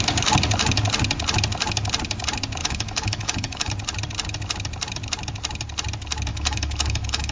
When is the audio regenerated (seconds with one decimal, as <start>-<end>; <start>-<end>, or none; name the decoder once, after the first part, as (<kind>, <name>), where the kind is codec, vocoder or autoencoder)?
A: 2.6-3.7 (autoencoder, DAC-VAE); 6.3-7.3